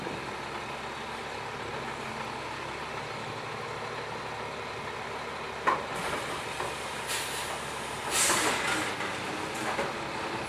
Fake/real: real